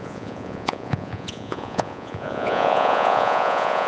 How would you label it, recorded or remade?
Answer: remade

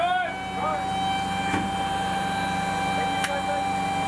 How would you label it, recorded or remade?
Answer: recorded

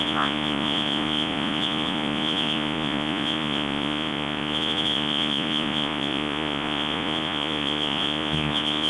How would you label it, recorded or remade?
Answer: remade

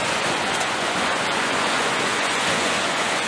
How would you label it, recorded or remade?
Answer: remade